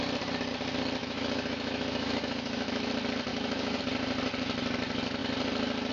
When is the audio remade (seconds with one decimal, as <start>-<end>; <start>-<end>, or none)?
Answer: 1.0-2.9; 3.3-3.8

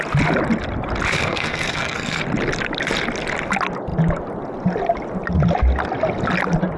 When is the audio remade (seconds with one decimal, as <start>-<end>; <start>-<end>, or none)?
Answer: 1.1-2.2

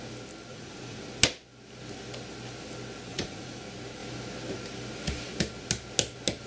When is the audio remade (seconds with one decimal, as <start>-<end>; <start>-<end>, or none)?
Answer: 0.5-1.0; 3.1-3.6